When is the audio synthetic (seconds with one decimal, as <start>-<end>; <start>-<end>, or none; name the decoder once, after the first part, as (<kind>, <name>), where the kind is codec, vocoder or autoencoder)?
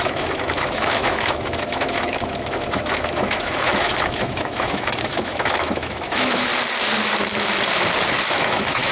0.0-6.5 (autoencoder, DAC-VAE); 8.3-8.9